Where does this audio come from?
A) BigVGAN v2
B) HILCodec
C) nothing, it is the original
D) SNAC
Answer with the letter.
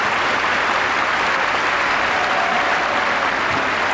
C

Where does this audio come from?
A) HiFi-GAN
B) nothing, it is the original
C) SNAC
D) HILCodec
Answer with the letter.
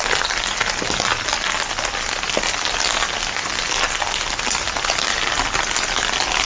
B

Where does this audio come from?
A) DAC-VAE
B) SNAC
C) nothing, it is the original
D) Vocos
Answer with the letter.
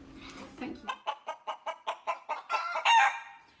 C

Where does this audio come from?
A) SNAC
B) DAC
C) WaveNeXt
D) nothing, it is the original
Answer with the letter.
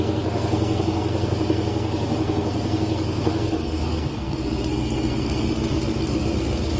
A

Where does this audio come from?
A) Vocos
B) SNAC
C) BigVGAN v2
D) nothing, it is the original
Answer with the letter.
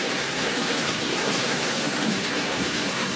B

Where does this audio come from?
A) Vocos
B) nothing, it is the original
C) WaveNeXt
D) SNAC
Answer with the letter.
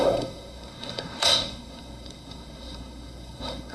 D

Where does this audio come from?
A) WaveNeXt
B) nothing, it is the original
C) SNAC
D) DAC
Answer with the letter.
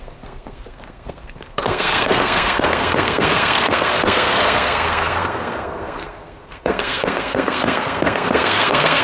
C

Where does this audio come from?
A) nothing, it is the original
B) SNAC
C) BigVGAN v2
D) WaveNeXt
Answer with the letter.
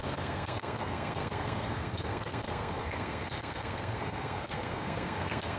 B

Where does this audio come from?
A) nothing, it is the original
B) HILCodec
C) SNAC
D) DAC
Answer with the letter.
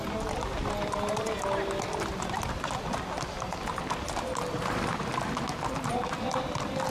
A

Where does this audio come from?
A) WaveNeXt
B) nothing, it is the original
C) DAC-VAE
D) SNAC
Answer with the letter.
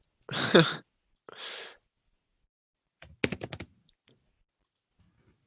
B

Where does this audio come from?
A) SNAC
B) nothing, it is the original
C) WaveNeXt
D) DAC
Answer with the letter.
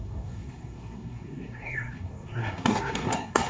A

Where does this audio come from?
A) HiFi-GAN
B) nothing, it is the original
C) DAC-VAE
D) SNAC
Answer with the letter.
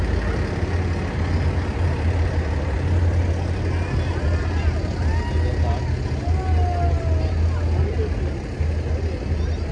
B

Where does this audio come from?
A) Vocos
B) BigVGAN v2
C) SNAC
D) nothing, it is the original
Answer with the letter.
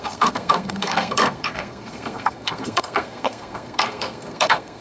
C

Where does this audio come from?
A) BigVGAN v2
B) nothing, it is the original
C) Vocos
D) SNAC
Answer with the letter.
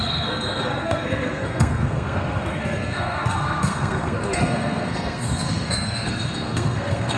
D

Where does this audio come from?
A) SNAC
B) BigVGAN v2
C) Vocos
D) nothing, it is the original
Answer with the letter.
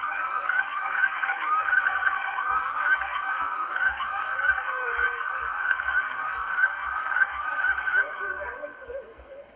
A